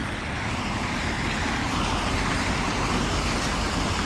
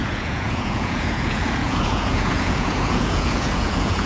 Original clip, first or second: first